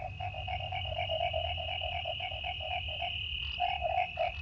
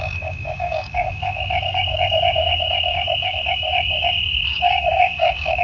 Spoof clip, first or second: second